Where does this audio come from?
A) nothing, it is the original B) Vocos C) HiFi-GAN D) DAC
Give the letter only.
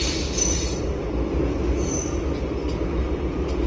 A